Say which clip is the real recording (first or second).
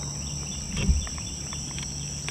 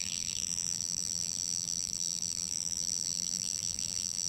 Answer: first